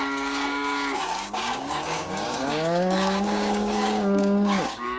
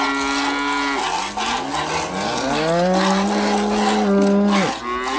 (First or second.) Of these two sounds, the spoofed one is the first